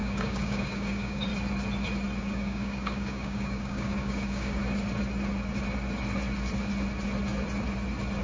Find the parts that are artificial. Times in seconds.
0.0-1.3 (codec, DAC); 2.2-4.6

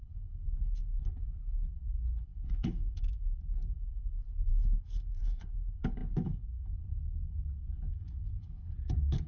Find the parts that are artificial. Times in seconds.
0.0-9.3 (codec, HILCodec)

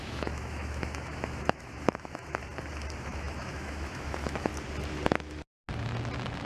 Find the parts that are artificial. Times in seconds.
0.0-2.4 (autoencoder, DAC-VAE); 3.0-4.5

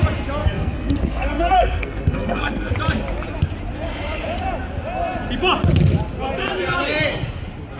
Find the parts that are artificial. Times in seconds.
0.4-2.7 (codec, SNAC)

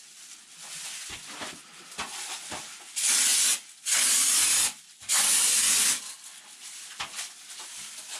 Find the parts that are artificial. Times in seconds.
none